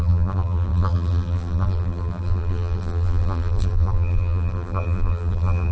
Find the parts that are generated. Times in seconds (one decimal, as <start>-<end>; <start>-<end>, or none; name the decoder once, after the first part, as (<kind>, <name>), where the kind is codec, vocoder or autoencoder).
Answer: 0.0-5.7 (vocoder, BigVGAN v2)